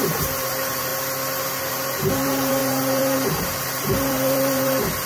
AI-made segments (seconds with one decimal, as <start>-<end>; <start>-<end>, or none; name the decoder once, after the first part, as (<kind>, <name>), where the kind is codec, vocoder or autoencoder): 0.0-0.9 (vocoder, BigVGAN v2); 1.7-5.1